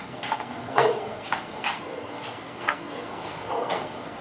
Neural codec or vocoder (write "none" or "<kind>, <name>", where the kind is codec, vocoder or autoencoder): codec, SNAC